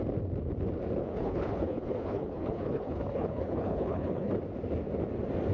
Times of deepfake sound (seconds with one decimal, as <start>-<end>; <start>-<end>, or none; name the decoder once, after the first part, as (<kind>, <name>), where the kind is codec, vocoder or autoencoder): 1.0-4.3 (codec, HILCodec)